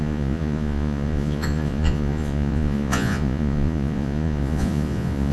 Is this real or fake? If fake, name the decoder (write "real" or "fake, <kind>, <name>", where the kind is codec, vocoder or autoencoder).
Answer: fake, vocoder, Vocos